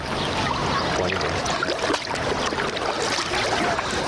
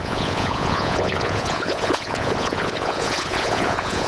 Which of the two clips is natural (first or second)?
first